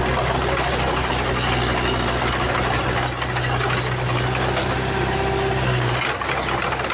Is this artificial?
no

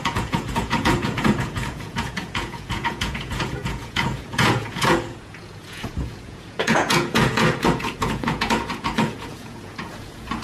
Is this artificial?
yes